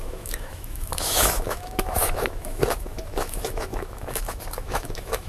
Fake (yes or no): yes